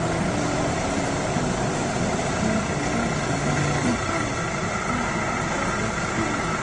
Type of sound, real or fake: real